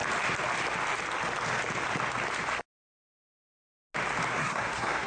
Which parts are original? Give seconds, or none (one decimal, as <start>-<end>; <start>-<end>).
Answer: 0.0-2.7; 3.3-4.3